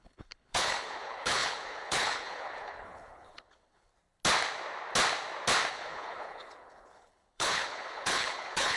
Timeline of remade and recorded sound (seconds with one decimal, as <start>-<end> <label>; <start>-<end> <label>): 0.0-3.9 remade; 3.9-5.7 recorded; 5.7-8.8 remade